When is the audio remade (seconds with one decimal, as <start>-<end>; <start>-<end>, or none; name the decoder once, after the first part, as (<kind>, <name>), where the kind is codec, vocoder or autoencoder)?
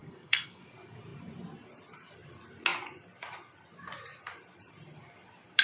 0.0-0.6 (codec, SNAC)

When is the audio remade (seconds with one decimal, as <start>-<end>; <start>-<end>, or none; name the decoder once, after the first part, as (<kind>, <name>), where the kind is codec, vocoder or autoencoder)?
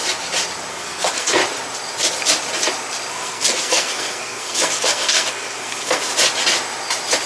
0.7-1.4 (codec, SNAC); 3.1-6.1